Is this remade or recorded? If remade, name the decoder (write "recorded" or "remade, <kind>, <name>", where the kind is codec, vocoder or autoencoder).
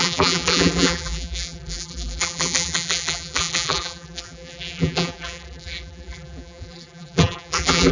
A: remade, vocoder, BigVGAN v2